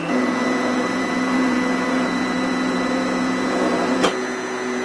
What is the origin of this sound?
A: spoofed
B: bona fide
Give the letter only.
A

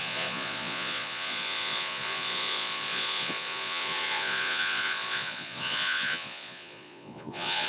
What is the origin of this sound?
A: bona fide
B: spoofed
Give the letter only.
B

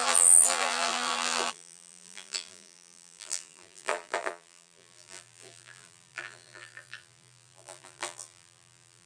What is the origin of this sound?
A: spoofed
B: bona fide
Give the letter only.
A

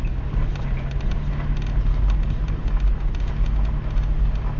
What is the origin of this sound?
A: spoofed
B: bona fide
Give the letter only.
B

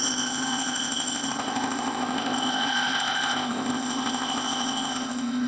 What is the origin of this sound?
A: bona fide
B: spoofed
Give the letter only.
B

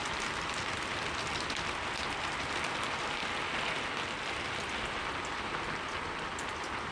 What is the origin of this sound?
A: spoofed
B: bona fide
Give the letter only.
B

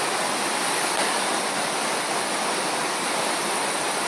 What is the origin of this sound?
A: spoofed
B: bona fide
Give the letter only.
B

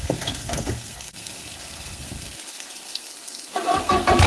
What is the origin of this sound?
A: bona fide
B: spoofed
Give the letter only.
B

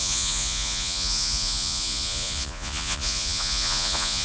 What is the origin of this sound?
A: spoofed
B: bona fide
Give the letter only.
A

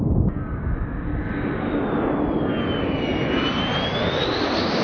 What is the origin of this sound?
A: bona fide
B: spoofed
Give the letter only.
A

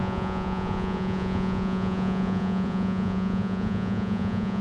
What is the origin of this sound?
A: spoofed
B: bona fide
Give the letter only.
A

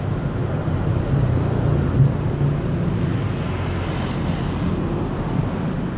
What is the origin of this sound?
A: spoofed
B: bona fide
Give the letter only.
B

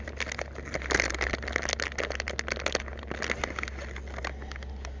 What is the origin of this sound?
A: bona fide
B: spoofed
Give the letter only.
A